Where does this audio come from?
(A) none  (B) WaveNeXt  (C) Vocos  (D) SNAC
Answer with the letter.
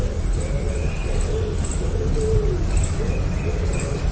A